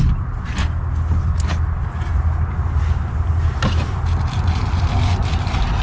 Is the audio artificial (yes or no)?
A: no